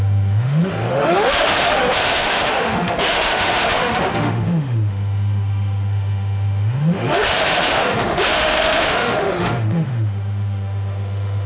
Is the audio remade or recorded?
remade